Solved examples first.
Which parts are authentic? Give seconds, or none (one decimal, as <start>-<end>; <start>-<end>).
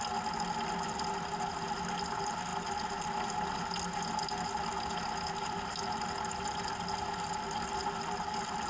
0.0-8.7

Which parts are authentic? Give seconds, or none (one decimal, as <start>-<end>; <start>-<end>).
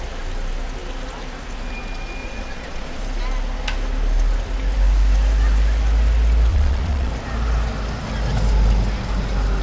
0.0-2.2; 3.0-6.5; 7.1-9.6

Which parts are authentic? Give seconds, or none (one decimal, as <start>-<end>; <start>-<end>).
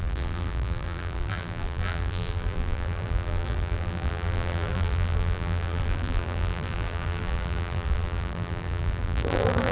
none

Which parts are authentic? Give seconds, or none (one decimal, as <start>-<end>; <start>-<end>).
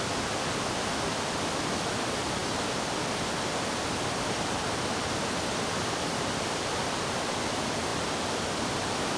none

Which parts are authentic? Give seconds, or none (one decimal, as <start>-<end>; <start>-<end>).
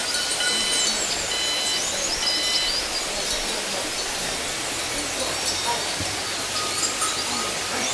0.0-7.9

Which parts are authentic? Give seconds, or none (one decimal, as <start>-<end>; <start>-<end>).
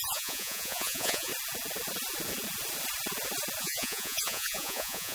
1.3-3.6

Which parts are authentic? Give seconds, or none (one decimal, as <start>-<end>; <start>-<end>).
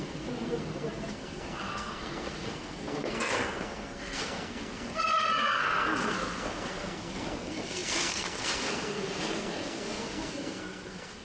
none